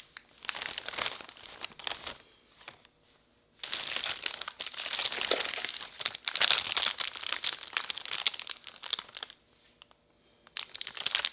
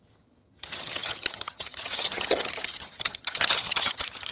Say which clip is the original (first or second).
first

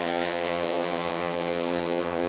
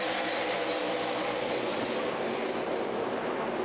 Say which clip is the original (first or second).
second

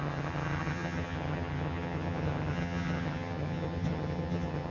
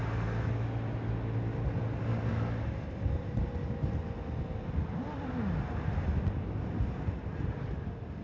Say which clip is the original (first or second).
second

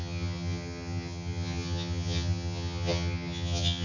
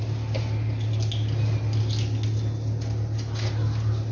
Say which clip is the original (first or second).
second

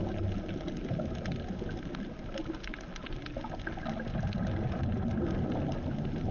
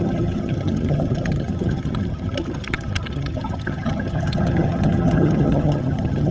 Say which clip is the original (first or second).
first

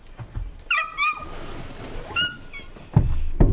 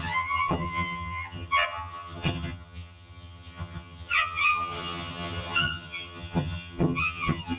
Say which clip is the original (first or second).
first